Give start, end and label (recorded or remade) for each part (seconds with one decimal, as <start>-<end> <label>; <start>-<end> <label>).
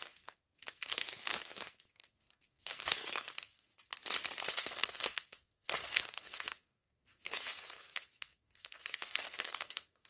0.0-3.7 remade; 3.7-4.5 recorded; 4.5-10.1 remade